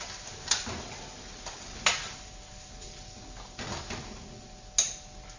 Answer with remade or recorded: recorded